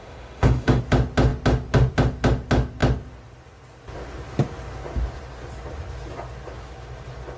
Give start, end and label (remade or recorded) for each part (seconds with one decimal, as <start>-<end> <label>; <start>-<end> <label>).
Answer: 0.0-0.8 remade; 0.8-7.4 recorded